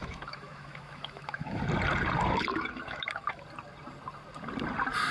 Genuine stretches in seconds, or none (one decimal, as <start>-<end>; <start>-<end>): 1.6-2.5; 3.4-5.1